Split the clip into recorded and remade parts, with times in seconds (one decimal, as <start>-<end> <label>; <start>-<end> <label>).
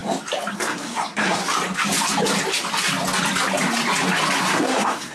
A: 0.0-0.5 recorded; 0.5-1.4 remade; 1.4-4.4 recorded; 4.4-5.1 remade